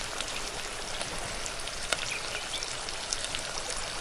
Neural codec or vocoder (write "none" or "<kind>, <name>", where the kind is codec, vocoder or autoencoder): none